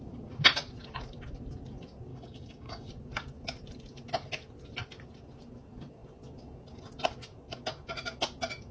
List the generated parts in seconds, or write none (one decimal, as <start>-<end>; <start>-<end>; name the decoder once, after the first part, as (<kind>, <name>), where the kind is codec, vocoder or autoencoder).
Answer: 2.1-2.9 (codec, DAC)